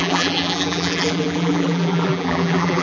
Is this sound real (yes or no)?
no